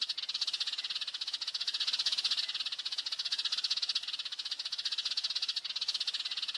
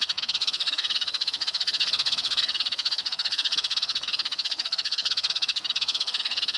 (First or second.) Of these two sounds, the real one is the first